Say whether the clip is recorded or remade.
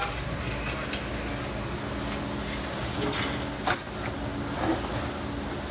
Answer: recorded